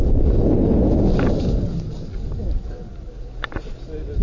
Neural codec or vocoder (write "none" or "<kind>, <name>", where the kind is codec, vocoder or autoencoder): none